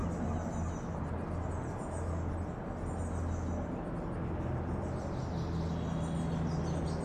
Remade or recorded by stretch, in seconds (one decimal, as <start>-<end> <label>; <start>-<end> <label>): 0.0-7.0 recorded